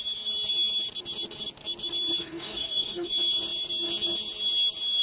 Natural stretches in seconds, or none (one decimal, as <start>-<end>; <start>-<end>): 0.0-2.2; 3.1-5.0